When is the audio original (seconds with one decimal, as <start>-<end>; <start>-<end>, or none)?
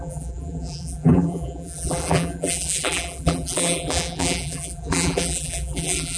none